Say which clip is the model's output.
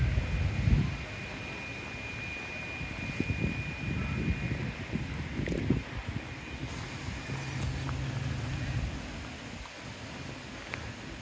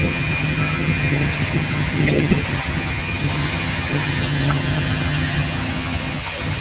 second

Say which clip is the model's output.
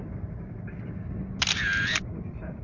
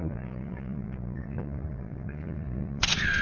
second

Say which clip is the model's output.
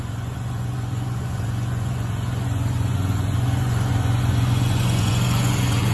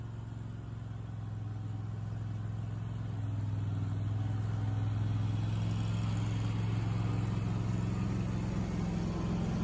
first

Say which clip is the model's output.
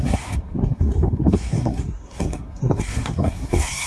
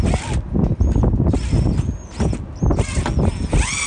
first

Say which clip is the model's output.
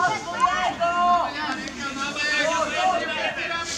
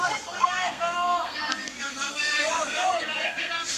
second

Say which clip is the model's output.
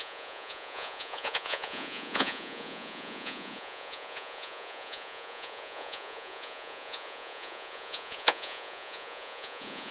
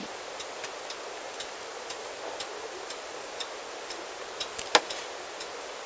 first